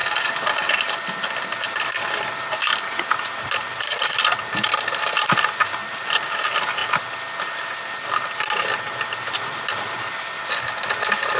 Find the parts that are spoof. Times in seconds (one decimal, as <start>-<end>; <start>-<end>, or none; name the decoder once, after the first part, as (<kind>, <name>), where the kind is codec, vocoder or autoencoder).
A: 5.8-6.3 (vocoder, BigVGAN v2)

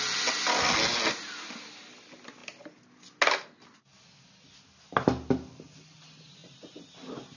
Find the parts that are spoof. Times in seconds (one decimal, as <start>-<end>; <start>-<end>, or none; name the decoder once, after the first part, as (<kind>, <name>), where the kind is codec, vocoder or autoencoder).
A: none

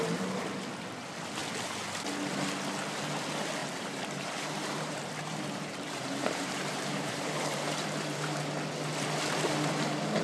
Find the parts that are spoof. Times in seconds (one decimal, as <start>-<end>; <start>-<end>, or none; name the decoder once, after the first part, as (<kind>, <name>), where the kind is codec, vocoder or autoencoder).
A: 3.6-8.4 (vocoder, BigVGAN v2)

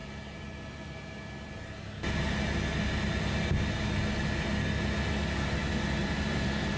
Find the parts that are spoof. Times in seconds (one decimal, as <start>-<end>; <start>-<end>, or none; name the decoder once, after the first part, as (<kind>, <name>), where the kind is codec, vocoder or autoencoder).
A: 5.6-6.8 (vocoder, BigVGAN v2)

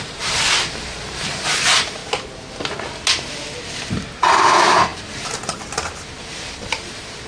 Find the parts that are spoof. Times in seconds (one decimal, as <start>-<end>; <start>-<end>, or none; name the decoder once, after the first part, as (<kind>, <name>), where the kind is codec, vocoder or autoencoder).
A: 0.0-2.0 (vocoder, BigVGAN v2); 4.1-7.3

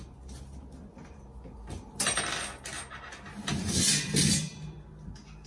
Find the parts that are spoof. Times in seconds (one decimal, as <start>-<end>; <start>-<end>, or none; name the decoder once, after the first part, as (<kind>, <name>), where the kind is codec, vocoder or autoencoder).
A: none

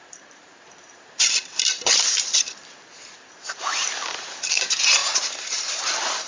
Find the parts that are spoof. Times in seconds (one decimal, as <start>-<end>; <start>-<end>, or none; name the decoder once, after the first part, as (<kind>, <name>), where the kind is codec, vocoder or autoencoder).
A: 0.0-6.3 (vocoder, BigVGAN v2)